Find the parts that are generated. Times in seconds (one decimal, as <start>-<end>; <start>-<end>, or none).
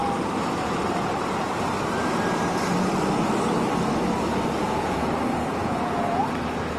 4.6-5.1; 5.6-6.2